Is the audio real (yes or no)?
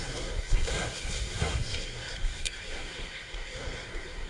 no